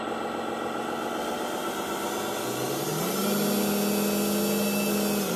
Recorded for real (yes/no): yes